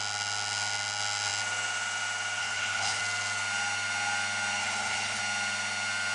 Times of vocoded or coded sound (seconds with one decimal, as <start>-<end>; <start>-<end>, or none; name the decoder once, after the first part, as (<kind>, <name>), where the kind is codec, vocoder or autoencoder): 2.4-3.0 (codec, HILCodec); 4.6-5.2